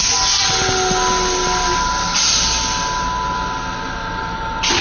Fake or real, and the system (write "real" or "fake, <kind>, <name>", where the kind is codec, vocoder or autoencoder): real